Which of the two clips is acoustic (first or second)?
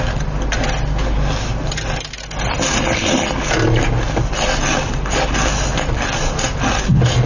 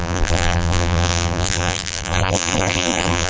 first